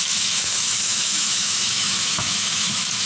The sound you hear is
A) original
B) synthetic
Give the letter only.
B